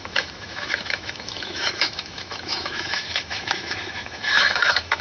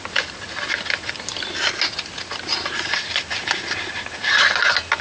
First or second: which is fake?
first